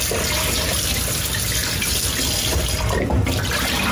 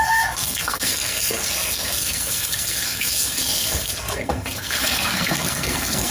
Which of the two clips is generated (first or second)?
second